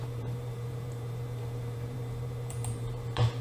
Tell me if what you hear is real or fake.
fake